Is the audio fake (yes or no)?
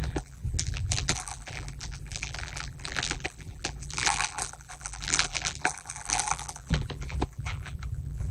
yes